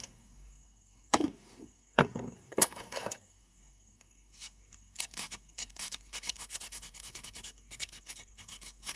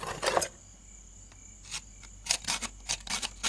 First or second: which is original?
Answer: second